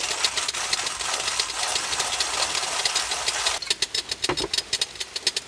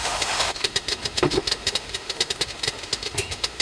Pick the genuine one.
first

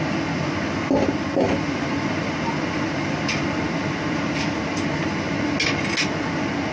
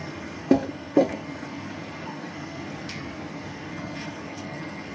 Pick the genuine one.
first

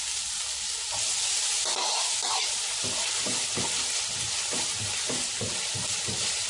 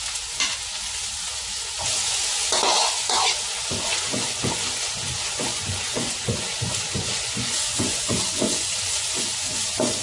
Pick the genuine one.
first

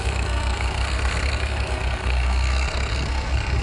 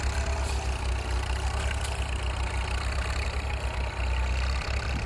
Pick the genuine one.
second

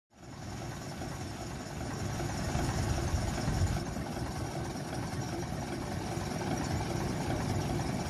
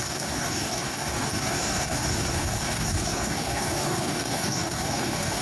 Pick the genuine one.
first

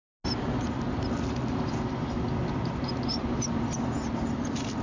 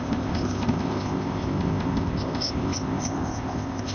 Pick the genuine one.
first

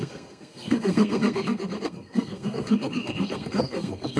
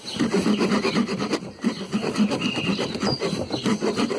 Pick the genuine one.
second